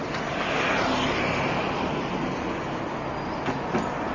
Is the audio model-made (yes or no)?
no